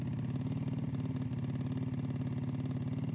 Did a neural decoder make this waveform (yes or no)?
no